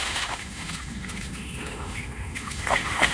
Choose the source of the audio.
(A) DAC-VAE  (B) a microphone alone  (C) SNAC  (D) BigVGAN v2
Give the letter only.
A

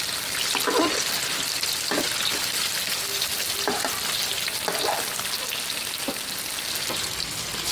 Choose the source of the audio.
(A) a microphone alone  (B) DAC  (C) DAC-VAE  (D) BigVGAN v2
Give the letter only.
A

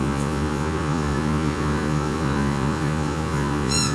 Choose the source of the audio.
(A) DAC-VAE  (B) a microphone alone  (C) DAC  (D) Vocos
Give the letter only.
D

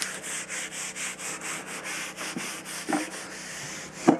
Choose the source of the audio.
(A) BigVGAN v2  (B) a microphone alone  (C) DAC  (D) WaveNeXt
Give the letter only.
B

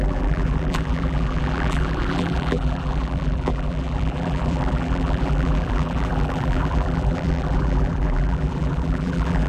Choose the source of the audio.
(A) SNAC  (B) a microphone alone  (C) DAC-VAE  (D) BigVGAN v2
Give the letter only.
D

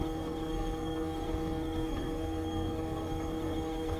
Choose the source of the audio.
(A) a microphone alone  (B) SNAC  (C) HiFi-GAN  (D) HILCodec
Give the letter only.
B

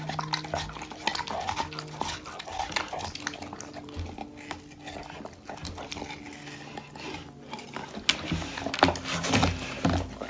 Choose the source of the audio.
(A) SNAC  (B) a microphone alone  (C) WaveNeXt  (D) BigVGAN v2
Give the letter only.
B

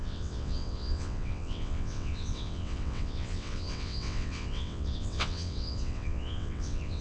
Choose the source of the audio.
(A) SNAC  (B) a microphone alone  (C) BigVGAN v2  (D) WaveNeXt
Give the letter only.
D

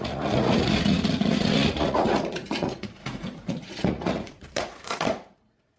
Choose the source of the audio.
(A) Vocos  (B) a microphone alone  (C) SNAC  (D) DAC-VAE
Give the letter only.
A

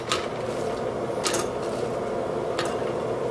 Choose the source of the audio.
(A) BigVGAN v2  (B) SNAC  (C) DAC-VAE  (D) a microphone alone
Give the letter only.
D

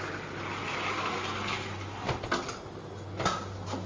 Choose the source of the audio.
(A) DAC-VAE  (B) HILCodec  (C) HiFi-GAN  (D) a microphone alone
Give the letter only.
D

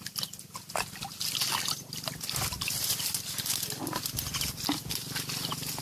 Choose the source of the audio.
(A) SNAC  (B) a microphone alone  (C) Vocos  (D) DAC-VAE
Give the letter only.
B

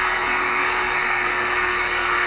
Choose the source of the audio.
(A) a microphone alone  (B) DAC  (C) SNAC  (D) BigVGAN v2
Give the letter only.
C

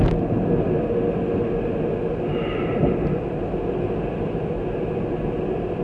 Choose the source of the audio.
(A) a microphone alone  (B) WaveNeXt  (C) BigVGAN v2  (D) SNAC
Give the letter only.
A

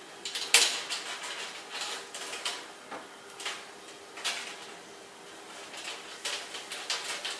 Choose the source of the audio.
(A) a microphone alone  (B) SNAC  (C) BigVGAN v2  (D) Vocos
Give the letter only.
A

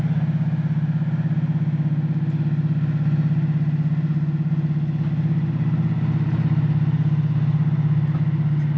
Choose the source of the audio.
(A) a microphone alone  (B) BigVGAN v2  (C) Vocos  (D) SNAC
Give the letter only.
A